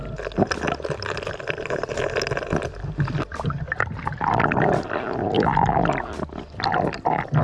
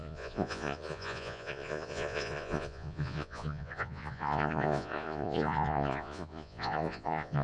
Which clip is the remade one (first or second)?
second